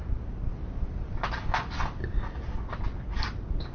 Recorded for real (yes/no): yes